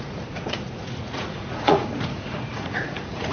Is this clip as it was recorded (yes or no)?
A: no